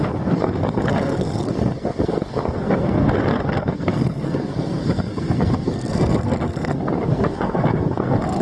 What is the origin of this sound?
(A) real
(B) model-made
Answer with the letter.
B